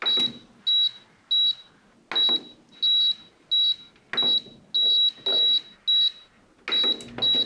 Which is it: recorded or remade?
recorded